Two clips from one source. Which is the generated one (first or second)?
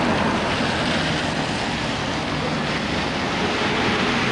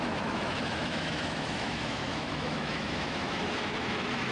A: second